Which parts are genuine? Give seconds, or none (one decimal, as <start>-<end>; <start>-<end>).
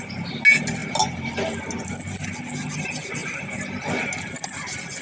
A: 0.0-5.0